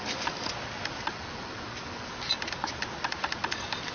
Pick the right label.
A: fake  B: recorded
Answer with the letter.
B